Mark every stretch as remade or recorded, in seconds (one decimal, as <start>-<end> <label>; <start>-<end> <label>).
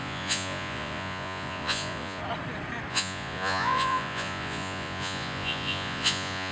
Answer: 0.0-2.2 remade; 2.2-2.9 recorded; 2.9-6.5 remade